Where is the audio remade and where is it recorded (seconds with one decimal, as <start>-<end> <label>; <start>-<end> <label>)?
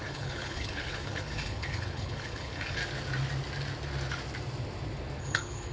0.0-2.8 remade; 2.8-5.2 recorded; 5.2-5.7 remade